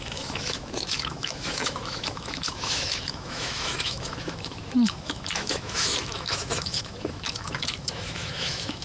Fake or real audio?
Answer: fake